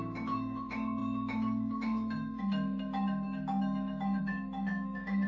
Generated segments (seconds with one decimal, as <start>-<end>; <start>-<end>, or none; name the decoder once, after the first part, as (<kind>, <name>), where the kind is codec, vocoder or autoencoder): 0.0-5.3 (autoencoder, DAC-VAE)